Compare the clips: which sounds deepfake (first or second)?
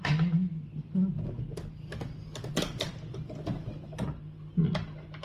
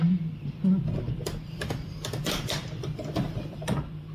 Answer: second